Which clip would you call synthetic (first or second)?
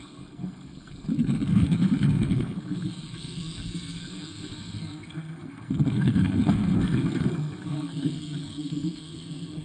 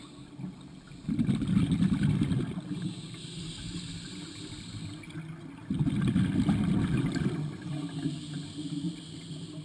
first